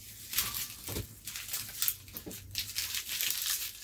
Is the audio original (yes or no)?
yes